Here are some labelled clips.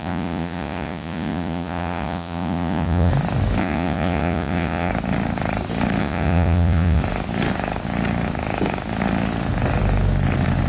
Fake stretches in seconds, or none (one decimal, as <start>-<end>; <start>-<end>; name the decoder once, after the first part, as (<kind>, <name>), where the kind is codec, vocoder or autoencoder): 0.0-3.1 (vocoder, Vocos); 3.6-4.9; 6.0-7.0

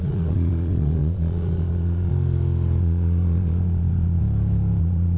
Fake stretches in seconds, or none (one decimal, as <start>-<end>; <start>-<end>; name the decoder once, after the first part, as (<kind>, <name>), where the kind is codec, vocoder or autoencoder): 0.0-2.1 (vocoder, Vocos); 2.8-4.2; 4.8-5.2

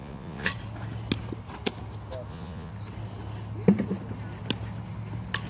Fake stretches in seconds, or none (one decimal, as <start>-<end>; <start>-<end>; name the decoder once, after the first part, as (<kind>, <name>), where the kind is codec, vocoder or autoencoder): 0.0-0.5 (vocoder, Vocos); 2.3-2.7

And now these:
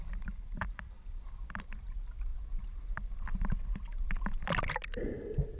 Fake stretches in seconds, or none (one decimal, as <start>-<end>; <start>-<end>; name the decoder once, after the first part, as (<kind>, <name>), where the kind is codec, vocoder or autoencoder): none

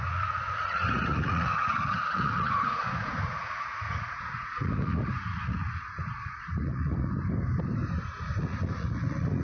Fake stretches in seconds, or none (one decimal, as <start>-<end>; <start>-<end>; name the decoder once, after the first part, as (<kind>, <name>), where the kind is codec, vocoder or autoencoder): 0.0-7.1 (vocoder, Vocos); 8.4-9.4

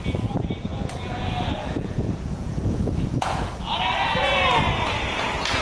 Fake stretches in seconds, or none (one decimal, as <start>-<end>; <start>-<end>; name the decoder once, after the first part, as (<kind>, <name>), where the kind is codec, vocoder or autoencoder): 0.0-3.5 (vocoder, Vocos); 5.1-5.6